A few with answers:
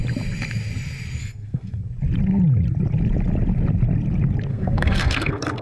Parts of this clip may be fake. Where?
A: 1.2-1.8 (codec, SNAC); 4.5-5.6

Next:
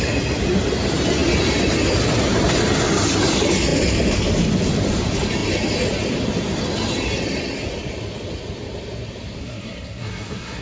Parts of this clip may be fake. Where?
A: 9.4-10.6 (codec, SNAC)